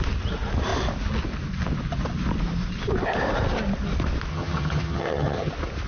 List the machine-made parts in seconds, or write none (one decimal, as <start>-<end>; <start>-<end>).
4.3-5.5